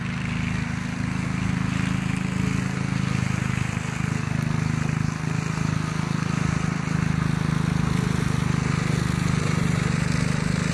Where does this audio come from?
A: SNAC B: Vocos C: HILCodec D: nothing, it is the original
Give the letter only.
D